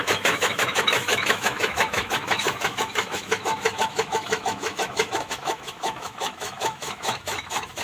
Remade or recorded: remade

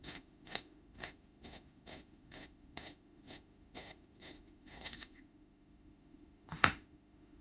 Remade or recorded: remade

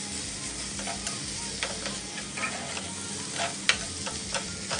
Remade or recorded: recorded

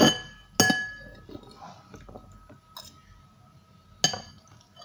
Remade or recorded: recorded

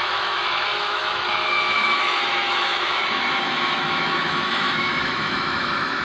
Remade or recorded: remade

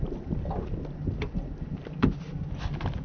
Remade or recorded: recorded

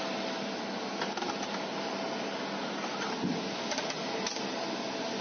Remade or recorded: recorded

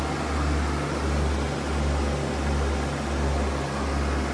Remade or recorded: recorded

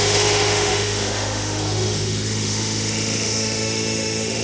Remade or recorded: remade